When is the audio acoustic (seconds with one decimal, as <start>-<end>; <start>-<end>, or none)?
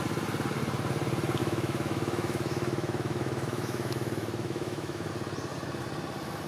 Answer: 0.0-1.4; 5.1-6.5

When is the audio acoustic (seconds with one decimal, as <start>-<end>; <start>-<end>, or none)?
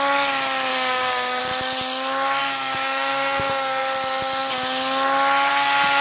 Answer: 0.0-0.7; 1.4-2.4; 3.8-6.0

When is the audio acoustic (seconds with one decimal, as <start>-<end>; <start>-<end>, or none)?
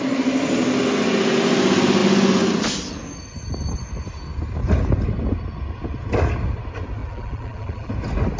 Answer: 0.0-7.0; 7.9-8.4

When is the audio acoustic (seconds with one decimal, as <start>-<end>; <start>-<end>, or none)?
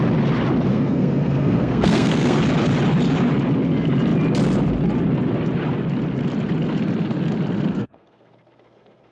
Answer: 0.0-0.7; 2.4-7.7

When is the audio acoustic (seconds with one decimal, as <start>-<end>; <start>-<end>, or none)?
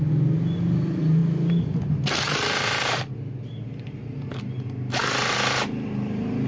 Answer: 0.0-6.5